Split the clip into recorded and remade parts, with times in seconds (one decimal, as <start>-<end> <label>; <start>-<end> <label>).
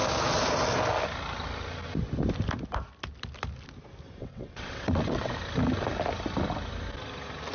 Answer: 0.0-4.2 recorded; 4.2-5.3 remade; 5.3-7.5 recorded